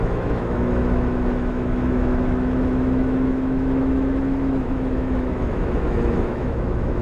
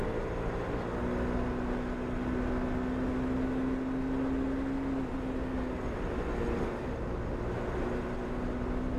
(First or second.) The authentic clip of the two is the second